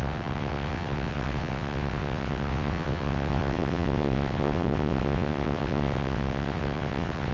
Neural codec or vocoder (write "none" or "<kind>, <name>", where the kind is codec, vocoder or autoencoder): vocoder, WaveNeXt